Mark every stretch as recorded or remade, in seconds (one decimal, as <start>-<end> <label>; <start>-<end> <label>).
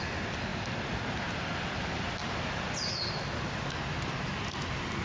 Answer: 0.0-5.0 recorded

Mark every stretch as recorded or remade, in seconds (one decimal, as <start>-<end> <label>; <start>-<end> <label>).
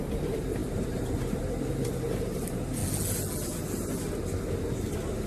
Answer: 0.0-2.8 remade; 2.8-5.3 recorded